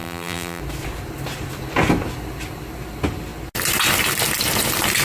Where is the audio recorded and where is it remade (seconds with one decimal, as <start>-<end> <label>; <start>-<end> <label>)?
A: 0.0-0.6 remade; 0.6-5.0 recorded